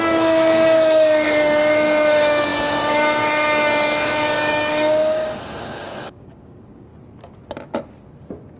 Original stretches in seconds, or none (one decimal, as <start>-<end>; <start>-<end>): 6.9-8.6